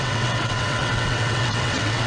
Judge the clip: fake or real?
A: fake